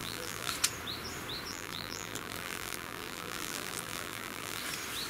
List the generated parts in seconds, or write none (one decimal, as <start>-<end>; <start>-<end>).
0.0-0.5; 1.5-4.6

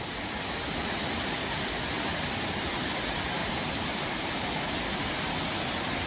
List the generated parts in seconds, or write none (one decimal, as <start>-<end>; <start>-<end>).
3.4-4.0

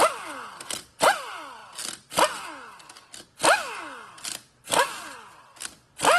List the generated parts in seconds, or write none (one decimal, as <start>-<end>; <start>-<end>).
0.0-1.6; 5.3-6.2

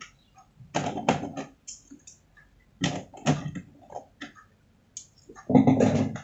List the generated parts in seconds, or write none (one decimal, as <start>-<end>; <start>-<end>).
1.3-2.3